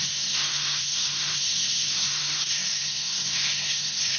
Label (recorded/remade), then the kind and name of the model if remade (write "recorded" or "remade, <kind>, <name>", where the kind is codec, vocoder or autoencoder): remade, codec, SNAC